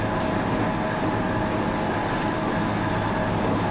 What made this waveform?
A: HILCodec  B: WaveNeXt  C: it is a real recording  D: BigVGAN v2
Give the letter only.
C